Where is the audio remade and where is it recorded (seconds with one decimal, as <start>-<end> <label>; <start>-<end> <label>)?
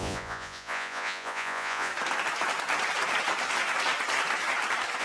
0.0-1.9 remade; 1.9-5.0 recorded